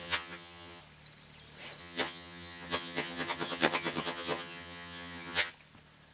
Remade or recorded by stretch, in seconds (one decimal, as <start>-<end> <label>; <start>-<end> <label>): 0.0-0.8 remade; 0.8-1.8 recorded; 1.8-5.5 remade; 5.5-6.1 recorded